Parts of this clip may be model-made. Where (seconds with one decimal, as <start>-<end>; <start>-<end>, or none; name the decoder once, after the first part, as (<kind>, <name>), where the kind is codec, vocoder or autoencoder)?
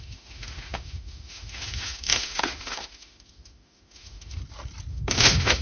0.0-4.4 (autoencoder, DAC-VAE); 4.9-5.6